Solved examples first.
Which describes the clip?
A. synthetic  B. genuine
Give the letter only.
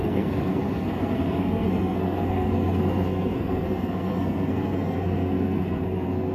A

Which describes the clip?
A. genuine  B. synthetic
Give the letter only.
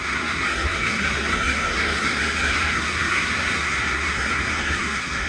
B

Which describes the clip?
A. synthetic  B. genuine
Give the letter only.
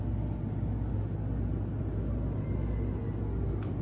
B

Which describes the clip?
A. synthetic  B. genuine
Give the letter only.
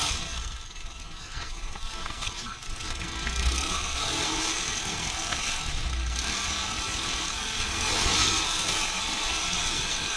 A